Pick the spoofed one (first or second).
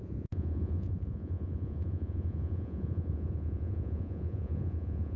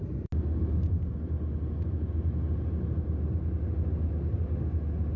first